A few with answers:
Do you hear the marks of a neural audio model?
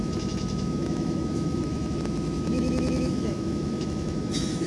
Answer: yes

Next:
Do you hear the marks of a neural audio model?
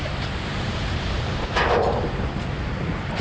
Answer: yes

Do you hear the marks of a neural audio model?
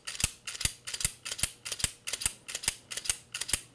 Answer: no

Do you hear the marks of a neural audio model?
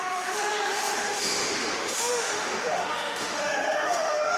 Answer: yes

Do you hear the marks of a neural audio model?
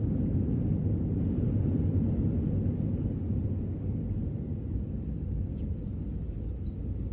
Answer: no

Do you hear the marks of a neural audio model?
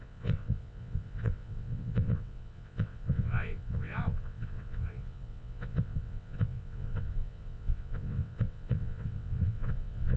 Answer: yes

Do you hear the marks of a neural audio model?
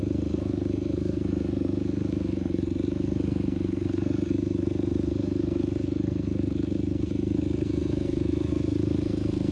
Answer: yes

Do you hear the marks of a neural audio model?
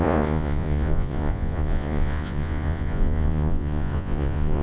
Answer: yes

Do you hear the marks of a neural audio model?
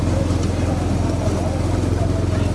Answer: no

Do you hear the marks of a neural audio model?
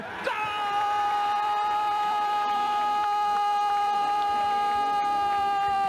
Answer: yes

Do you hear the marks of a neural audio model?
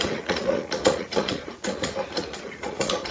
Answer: yes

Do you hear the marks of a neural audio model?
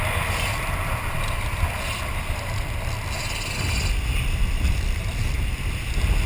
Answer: no